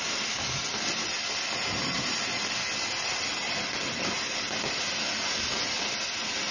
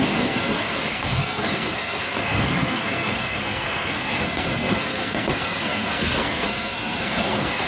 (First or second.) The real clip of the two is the first